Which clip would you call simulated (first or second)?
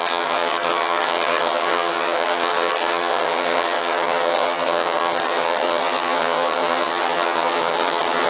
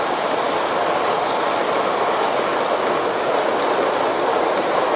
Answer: first